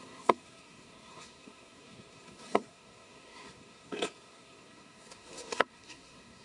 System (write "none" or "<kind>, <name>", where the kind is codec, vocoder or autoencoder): codec, SNAC